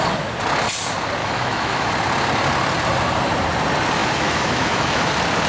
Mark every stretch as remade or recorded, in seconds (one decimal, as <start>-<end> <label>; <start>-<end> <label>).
0.0-1.2 recorded; 1.2-1.9 remade; 1.9-4.0 recorded; 4.0-5.1 remade; 5.1-5.5 recorded